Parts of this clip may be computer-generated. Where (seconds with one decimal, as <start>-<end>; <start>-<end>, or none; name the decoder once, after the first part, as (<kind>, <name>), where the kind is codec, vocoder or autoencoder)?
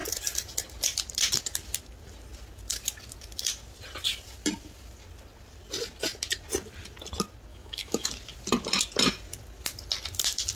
7.5-8.1 (autoencoder, DAC-VAE)